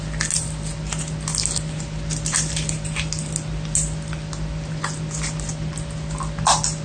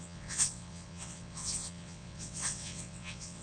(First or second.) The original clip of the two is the first